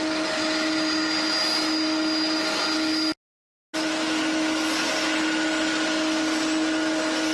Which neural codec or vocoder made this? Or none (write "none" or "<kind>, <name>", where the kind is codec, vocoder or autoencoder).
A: none